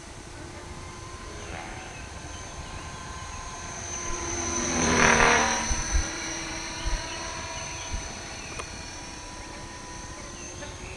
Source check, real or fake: fake